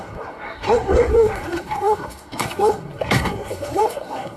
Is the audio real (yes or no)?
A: no